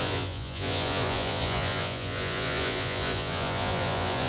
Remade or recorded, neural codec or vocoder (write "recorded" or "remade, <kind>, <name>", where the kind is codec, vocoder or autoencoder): remade, vocoder, Vocos